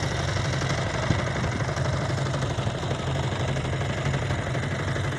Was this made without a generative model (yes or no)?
yes